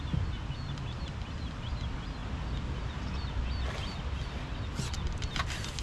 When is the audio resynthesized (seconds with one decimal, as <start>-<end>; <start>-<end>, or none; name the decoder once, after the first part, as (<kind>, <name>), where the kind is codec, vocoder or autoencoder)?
none